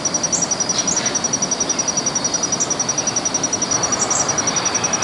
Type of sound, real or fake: real